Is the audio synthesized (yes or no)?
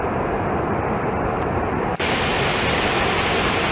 no